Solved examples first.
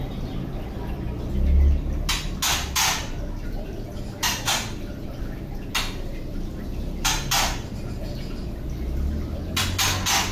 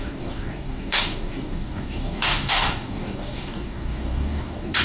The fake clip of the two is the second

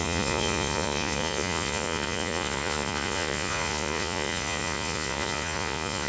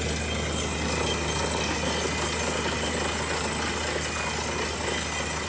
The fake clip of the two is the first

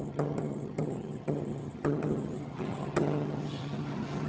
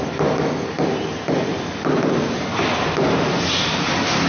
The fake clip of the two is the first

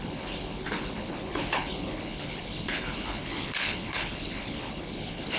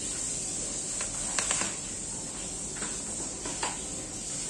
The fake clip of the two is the first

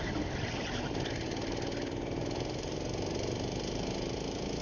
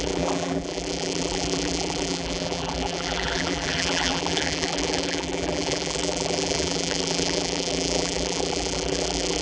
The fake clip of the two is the second